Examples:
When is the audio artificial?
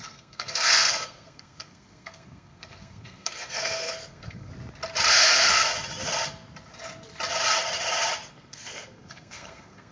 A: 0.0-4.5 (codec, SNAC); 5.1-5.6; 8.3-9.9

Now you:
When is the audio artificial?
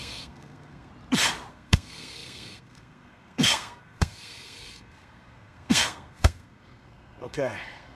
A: 0.0-0.9 (codec, SNAC); 1.5-7.9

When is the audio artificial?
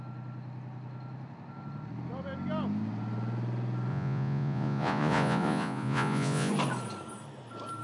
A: 3.9-6.5 (vocoder, Vocos)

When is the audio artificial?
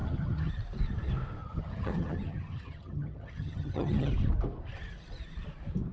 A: 0.0-0.5 (vocoder, HiFi-GAN); 1.4-4.1